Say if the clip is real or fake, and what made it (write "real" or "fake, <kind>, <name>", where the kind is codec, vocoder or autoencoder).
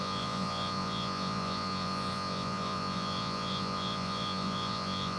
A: fake, vocoder, Vocos